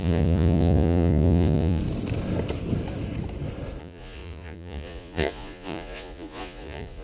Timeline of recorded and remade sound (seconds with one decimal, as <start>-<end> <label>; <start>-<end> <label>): 0.0-1.8 remade; 1.8-3.8 recorded; 3.8-7.0 remade